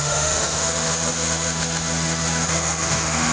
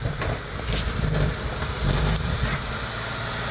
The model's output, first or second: first